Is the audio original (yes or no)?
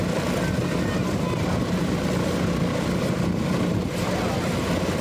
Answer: yes